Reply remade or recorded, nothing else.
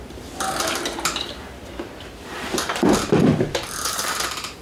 remade